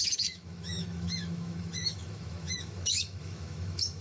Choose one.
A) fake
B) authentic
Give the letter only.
A